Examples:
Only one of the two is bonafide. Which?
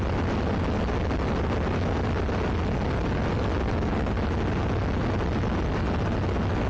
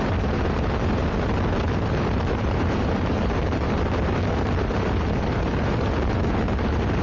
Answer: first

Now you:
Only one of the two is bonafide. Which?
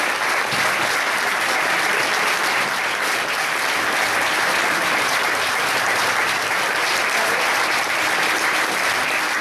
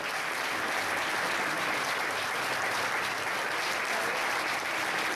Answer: second